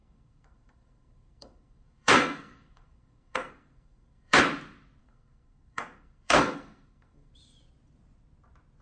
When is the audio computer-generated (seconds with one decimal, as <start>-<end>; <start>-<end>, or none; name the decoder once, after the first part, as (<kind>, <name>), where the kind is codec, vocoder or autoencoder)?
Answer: 0.0-4.4 (codec, SNAC); 5.0-7.3